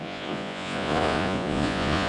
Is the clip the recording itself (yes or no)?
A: no